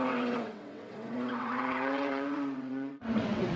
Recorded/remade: remade